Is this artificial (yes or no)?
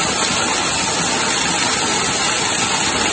no